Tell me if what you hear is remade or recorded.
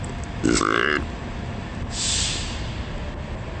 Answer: recorded